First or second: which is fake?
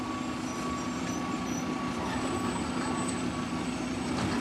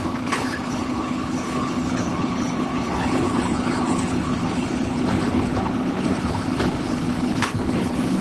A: second